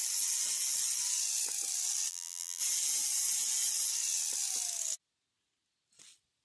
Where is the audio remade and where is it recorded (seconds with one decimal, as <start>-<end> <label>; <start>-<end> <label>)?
0.0-2.1 recorded; 2.1-2.6 remade; 2.6-6.4 recorded